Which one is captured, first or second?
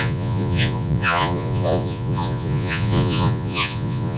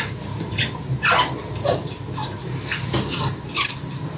second